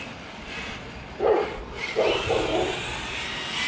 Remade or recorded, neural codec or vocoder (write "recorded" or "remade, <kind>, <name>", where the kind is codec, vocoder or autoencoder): recorded